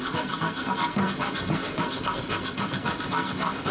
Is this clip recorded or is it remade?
remade